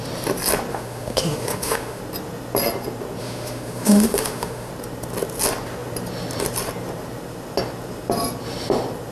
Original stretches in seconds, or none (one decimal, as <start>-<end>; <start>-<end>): 0.0-0.7; 2.0-3.2; 4.7-9.1